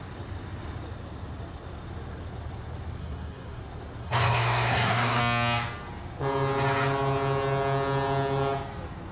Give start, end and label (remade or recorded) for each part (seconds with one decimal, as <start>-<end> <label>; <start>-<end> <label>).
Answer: 0.0-3.0 recorded; 3.0-3.6 remade; 3.6-4.0 recorded; 4.0-5.2 remade; 5.2-9.1 recorded